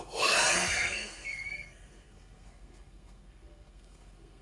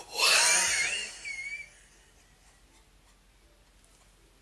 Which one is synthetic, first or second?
first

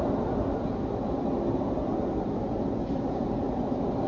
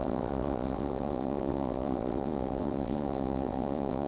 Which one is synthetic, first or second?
second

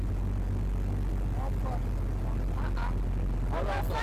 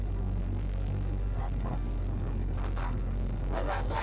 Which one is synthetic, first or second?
second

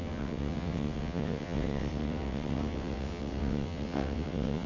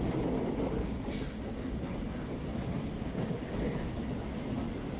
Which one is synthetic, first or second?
first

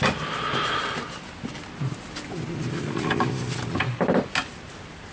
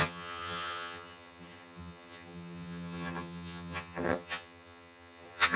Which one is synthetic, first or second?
second